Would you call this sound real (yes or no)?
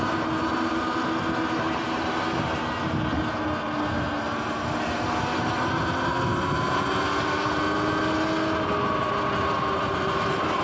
yes